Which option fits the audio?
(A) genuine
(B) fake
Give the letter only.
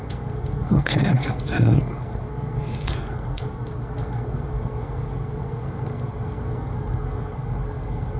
B